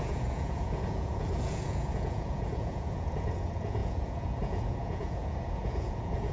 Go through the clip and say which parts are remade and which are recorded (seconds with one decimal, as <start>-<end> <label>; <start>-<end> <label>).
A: 0.0-6.3 remade